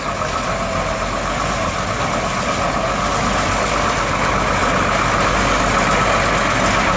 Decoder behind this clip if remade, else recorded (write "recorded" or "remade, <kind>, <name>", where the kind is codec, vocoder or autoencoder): recorded